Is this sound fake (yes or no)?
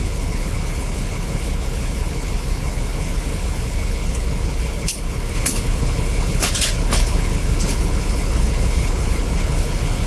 yes